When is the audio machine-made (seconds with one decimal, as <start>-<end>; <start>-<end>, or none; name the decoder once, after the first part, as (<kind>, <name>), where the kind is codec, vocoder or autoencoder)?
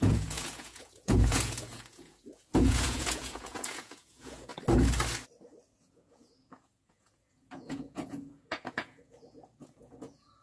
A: 0.0-4.5 (vocoder, Vocos); 5.8-10.4